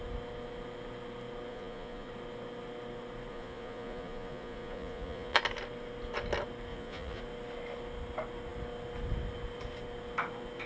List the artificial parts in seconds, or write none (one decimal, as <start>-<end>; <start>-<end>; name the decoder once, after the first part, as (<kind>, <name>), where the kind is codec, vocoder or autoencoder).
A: 1.5-2.1 (vocoder, Vocos); 3.3-5.4; 6.7-7.2